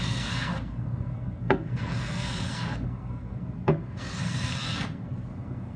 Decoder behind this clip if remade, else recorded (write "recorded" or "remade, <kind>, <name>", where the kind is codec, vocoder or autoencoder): remade, codec, SNAC